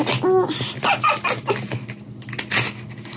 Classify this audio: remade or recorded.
recorded